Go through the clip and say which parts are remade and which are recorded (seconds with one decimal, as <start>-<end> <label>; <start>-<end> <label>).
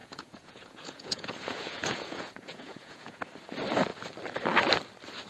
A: 0.0-3.2 remade; 3.2-5.3 recorded